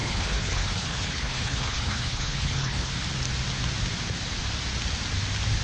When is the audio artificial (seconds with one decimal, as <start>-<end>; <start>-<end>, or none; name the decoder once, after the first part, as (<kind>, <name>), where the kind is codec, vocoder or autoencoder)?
0.0-2.9 (codec, HILCodec)